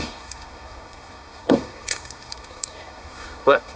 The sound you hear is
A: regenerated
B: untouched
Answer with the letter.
A